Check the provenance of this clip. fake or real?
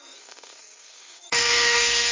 fake